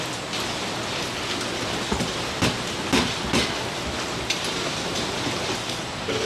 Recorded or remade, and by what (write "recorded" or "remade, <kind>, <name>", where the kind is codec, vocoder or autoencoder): recorded